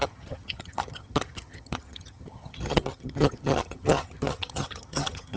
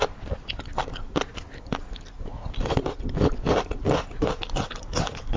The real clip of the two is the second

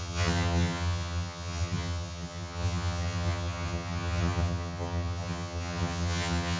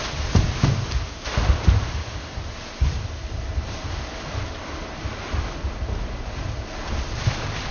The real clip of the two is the second